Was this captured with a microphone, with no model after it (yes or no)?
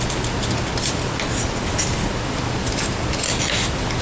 yes